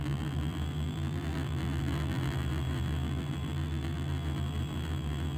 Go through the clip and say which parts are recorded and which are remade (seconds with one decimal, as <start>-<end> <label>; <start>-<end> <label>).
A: 0.0-5.4 remade